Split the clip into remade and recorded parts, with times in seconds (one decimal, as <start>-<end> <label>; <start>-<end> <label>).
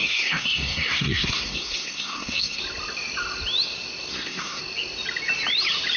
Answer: 0.0-2.6 remade; 2.6-4.1 recorded; 4.1-4.6 remade; 4.6-6.0 recorded